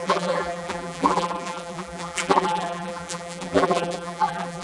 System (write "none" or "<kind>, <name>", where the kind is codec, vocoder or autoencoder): vocoder, BigVGAN v2